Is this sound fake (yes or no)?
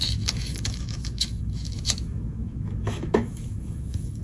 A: yes